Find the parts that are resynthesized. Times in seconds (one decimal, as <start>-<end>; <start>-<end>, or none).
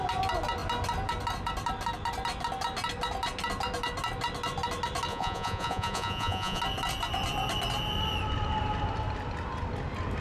5.1-6.6